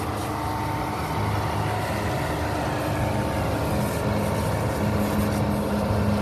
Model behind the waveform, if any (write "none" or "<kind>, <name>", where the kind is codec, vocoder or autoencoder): none